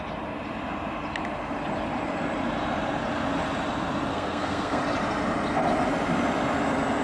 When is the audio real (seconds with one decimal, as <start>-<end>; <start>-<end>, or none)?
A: 0.0-4.1; 4.8-7.0